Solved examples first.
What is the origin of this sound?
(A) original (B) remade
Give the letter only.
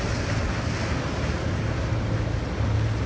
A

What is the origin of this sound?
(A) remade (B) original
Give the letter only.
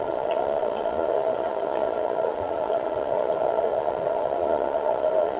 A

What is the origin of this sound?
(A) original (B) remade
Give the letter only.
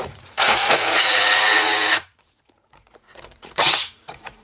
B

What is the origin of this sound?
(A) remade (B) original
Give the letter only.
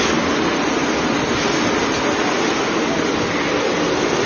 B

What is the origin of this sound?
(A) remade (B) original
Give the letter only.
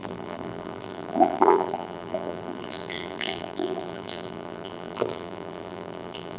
A